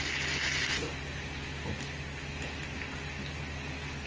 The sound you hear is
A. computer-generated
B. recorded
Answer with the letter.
B